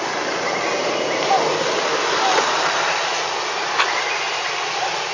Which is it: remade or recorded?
recorded